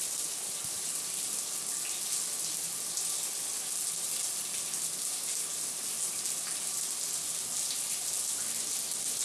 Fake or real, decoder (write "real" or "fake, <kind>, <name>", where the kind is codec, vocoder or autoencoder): real